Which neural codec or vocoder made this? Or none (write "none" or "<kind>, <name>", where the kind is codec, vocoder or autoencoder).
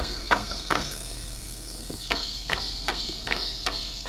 codec, SNAC